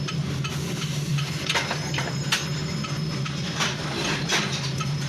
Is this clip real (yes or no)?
yes